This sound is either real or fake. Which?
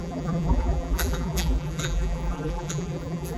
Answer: fake